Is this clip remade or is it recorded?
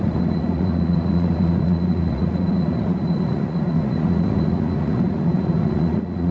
remade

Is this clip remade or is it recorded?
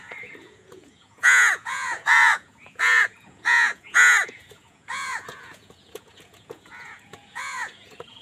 remade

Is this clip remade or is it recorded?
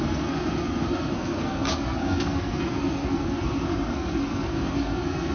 remade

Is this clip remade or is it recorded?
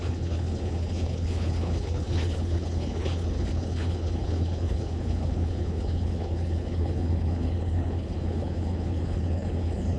remade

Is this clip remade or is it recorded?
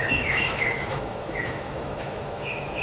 remade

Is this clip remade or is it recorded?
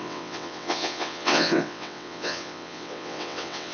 remade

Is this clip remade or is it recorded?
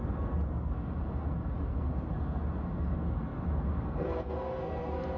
remade